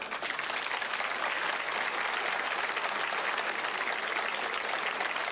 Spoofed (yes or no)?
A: no